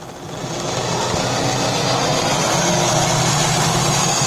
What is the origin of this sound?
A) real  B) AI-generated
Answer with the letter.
A